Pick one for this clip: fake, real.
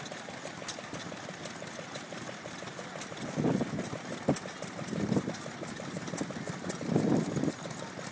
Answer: real